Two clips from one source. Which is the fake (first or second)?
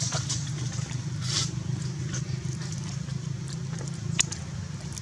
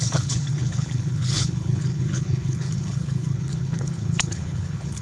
second